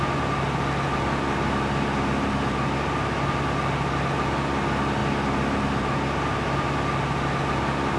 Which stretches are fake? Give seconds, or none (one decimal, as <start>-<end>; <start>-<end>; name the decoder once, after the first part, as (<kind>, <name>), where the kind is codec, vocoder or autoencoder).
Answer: none